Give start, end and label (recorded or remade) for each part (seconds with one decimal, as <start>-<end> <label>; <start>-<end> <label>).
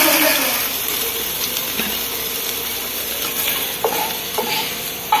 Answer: 0.0-5.2 remade